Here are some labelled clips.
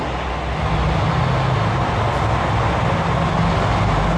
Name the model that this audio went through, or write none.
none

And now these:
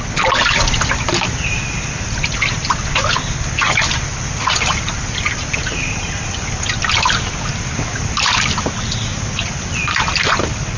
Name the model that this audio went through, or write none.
none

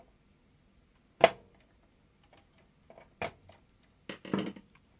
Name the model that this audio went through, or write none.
none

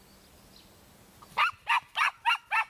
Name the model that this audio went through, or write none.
none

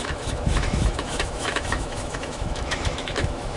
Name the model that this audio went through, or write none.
autoencoder, DAC-VAE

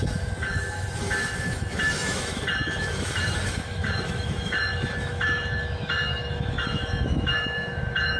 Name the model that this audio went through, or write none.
autoencoder, DAC-VAE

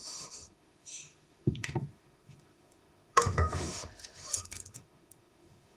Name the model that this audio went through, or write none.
autoencoder, DAC-VAE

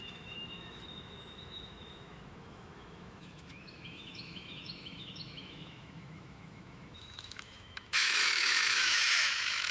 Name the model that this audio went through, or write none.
autoencoder, DAC-VAE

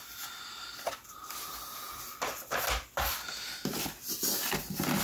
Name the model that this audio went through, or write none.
none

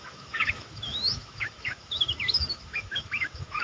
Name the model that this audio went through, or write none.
autoencoder, DAC-VAE